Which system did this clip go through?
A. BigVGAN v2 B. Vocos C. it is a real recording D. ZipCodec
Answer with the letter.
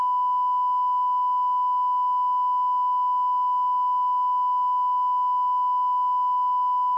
C